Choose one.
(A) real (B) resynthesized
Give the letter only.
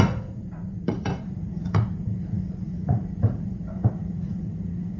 B